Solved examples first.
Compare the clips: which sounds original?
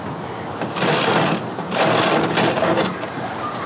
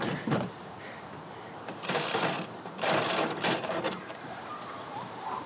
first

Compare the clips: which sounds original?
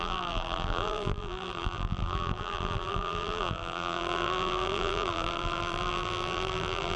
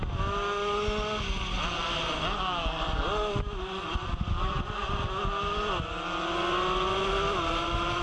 second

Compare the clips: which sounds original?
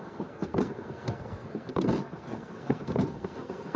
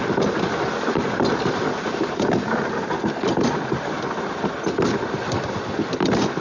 second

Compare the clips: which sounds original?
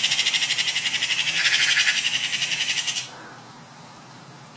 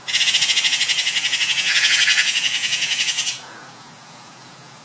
first